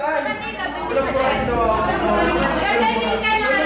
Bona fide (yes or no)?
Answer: yes